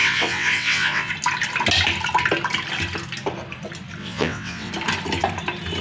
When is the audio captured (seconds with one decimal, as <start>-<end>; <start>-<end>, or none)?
1.1-4.0; 4.7-5.8